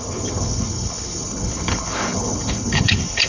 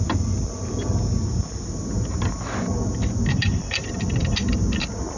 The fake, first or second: first